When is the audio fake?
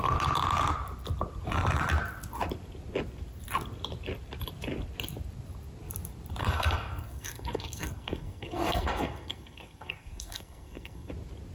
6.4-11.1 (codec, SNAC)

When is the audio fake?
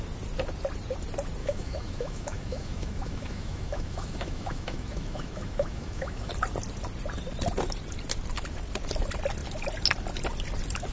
1.4-6.3 (autoencoder, DAC-VAE)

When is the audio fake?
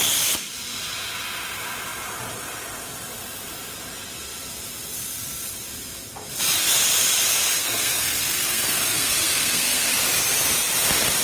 7.6-9.9 (codec, SNAC)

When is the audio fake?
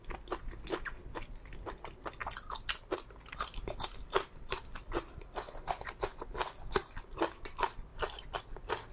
2.2-6.1 (vocoder, BigVGAN v2); 7.9-8.4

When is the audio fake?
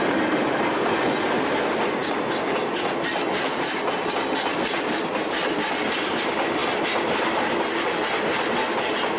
none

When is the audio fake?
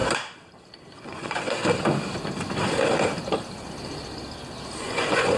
1.0-1.6 (vocoder, Vocos); 4.8-5.4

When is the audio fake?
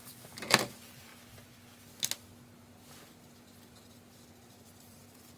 0.0-1.1 (vocoder, BigVGAN v2); 4.3-5.4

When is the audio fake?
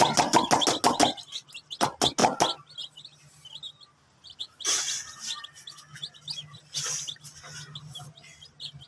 none